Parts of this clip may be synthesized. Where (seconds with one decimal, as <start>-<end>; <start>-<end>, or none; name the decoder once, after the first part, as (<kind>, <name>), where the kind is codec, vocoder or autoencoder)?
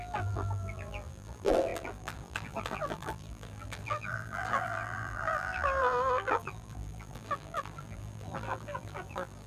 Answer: 0.0-9.5 (vocoder, BigVGAN v2)